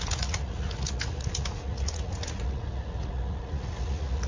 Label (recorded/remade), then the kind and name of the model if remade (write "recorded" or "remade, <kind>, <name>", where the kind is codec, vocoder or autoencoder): remade, vocoder, Vocos